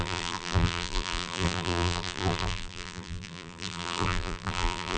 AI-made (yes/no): yes